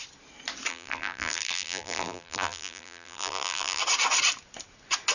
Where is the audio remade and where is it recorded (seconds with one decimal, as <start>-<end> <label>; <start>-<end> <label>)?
0.0-0.7 recorded; 0.7-3.8 remade; 3.8-5.1 recorded